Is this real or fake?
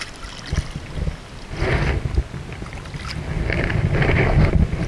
real